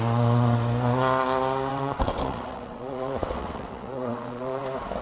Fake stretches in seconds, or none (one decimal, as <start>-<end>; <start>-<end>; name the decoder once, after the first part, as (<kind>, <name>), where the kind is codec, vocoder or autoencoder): 1.7-4.6 (vocoder, WaveNeXt)